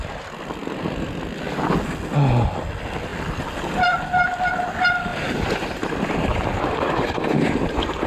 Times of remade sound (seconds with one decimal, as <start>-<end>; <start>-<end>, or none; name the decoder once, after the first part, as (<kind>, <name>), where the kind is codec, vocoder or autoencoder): 5.1-8.1 (vocoder, BigVGAN v2)